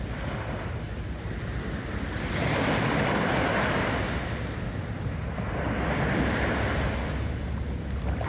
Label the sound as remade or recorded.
recorded